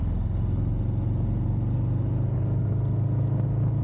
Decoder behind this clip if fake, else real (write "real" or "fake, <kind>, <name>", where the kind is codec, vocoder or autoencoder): real